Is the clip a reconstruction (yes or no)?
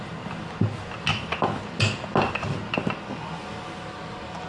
no